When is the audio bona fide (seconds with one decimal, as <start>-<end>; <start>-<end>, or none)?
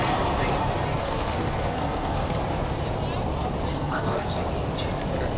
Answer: 0.0-1.0; 2.4-3.7; 4.4-5.4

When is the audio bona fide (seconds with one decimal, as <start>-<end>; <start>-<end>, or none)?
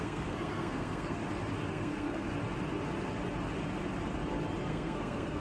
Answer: 1.2-1.7; 2.3-4.6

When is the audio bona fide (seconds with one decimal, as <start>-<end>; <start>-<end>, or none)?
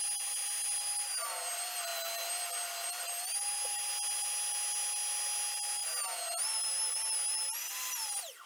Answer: 0.0-8.5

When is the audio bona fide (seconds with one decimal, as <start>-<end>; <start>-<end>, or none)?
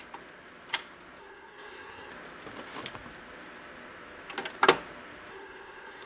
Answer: 0.0-1.2; 2.1-5.3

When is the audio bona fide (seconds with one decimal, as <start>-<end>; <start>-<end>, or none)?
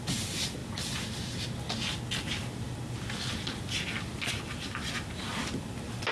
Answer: 0.0-6.1